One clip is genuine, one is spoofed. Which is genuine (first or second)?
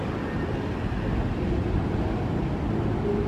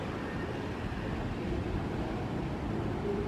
first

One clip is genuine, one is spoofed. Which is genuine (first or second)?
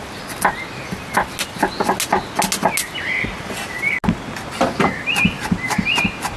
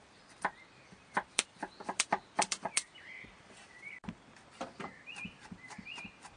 first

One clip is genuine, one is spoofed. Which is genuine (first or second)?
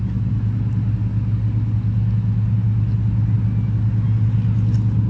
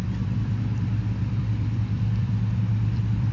first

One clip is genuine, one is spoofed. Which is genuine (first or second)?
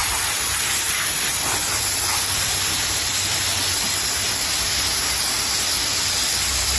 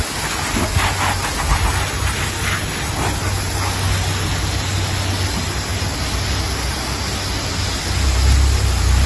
second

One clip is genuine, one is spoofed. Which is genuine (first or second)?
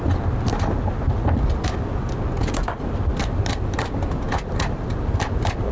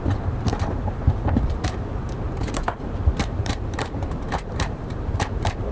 first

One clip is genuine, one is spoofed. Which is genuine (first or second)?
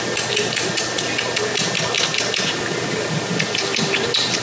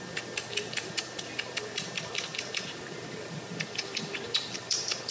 first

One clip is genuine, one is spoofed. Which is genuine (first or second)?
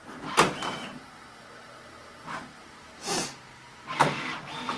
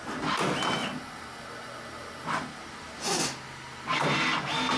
second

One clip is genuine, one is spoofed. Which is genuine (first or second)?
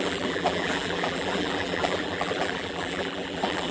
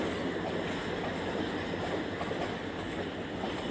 second